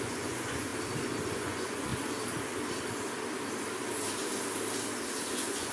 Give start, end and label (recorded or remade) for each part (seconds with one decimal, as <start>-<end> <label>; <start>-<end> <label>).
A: 0.0-0.7 remade; 0.7-1.3 recorded; 1.3-1.9 remade; 1.9-5.3 recorded; 5.3-5.7 remade